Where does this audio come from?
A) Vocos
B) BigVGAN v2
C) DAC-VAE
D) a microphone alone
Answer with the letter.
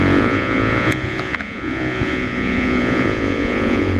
A